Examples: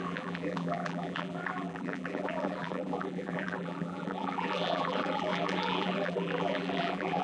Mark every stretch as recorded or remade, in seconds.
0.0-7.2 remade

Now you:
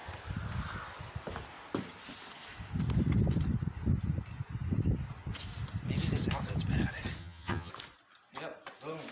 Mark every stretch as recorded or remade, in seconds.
0.0-7.2 recorded; 7.2-7.7 remade; 7.7-9.1 recorded